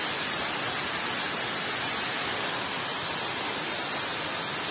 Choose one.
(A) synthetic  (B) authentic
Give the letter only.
B